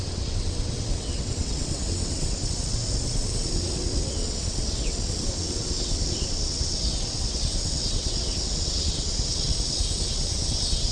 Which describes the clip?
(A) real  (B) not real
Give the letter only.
B